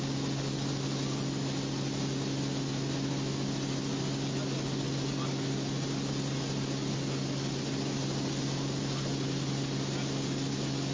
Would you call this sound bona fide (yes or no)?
yes